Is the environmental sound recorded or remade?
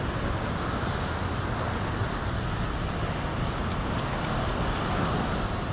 recorded